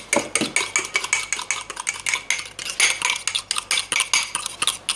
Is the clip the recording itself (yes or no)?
yes